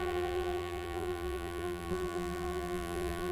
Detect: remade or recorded remade